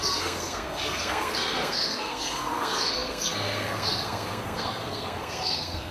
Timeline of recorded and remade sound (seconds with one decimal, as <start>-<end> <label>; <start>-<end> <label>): 0.0-5.9 remade